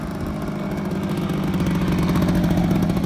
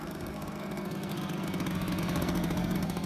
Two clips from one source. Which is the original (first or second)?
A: first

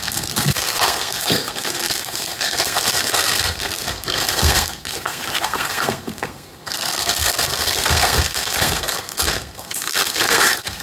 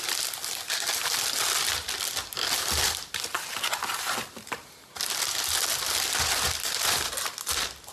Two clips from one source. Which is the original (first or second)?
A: second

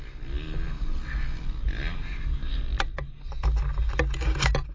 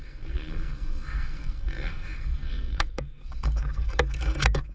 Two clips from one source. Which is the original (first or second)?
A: first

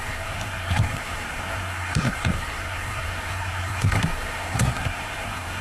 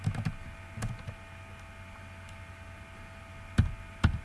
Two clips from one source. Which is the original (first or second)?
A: second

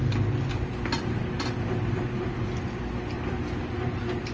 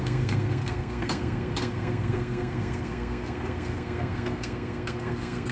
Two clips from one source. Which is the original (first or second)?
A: first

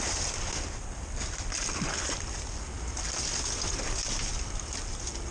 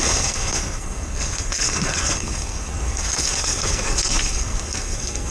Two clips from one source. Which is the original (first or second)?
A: first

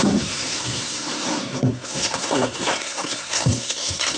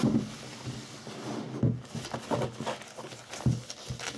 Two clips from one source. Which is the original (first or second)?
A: second